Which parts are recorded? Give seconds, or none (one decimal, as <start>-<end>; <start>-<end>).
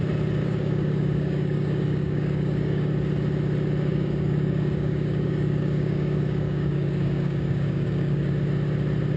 0.0-0.4; 2.9-3.9; 8.3-9.2